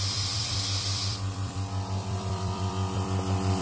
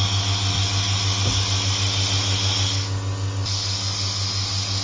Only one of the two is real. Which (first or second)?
second